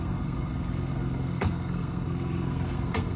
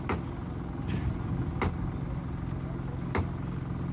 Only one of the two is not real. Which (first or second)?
first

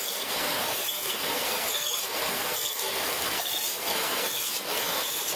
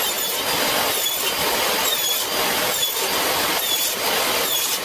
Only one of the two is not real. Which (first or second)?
first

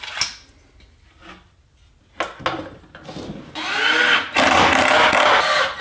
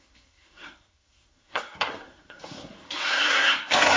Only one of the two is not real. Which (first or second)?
second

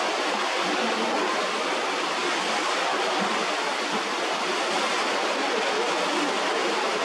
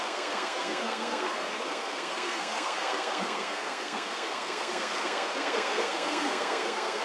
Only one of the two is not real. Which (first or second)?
second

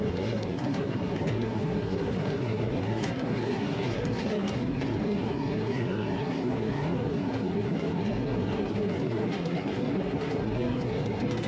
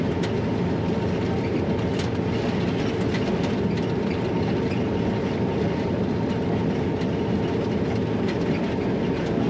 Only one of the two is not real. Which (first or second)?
first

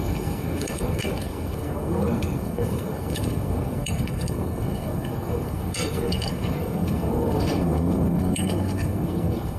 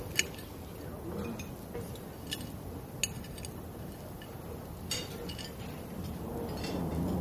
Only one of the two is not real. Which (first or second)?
first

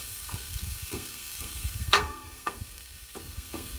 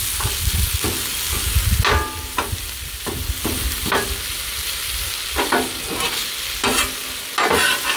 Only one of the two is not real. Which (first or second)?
first